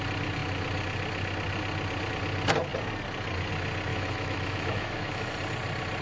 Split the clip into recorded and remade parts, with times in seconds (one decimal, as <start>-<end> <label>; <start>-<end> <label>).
0.0-3.9 recorded; 3.9-5.3 remade; 5.3-6.0 recorded